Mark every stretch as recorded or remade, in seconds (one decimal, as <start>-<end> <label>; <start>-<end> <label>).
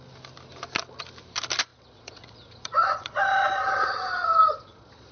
0.0-1.7 recorded; 1.7-5.1 remade